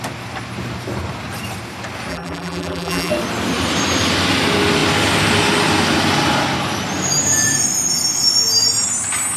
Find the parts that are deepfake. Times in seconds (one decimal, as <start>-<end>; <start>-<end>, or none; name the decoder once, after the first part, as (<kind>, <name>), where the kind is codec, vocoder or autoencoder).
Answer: 2.1-3.1 (vocoder, BigVGAN v2)